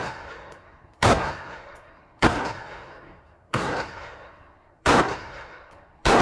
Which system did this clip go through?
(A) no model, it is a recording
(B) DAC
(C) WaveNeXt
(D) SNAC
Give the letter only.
D